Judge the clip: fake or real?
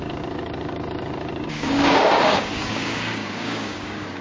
fake